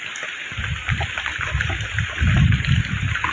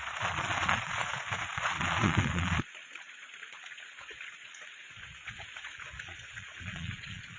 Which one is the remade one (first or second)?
second